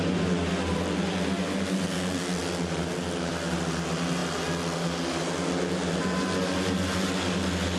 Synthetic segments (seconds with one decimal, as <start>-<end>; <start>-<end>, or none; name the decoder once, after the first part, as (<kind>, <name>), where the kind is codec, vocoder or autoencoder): none